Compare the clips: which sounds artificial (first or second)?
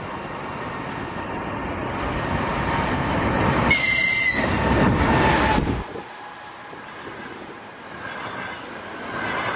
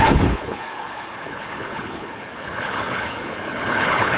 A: second